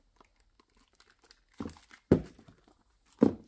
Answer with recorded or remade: recorded